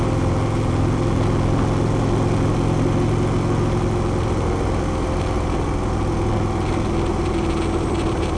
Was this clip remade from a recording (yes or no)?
no